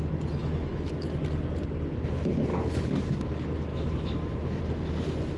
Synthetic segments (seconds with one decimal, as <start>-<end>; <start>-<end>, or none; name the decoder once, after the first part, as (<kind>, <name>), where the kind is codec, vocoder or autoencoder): 0.4-1.2 (autoencoder, DAC-VAE); 2.5-3.3; 3.7-4.6